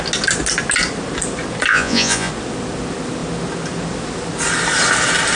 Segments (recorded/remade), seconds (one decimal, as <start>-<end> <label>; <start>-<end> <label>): 0.0-1.7 recorded; 1.7-2.3 remade; 2.3-5.4 recorded